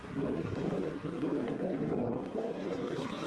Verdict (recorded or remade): remade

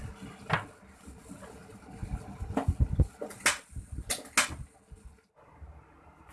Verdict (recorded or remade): recorded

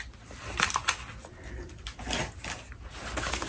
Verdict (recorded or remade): recorded